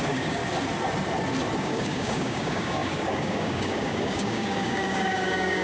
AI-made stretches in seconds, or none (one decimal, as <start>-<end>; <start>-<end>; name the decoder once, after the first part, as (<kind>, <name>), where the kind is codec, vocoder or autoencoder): 0.0-0.4 (codec, DAC); 1.6-5.6